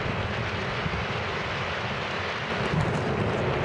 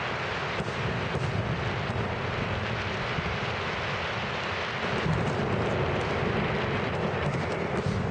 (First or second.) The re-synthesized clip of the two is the first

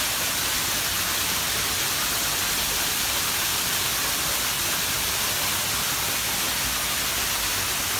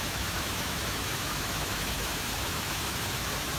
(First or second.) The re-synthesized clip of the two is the second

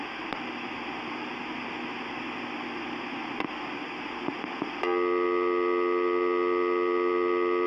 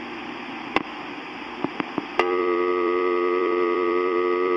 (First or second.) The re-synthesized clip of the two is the second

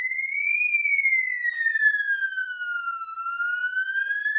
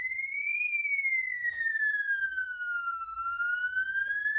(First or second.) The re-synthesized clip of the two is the second